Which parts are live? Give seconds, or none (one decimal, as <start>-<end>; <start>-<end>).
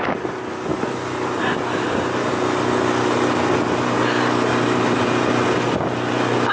0.0-4.5; 5.0-6.5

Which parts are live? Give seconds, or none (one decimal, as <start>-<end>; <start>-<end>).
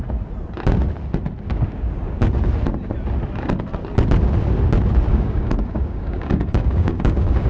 0.0-5.1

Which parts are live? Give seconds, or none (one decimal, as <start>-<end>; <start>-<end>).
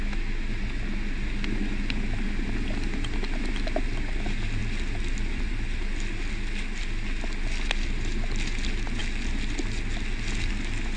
0.0-11.0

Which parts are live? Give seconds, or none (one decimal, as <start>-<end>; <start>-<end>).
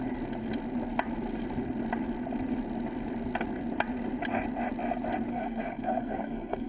0.0-5.3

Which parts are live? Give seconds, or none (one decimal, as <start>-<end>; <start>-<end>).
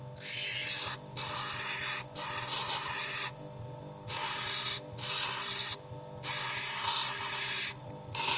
0.0-8.4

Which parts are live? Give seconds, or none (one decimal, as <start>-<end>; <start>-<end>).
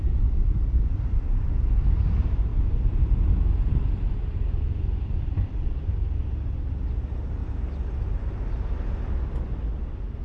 0.0-10.2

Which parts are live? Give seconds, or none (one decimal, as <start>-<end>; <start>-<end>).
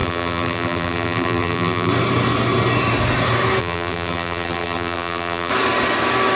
1.9-3.6; 5.5-6.4